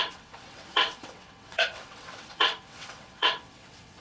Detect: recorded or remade remade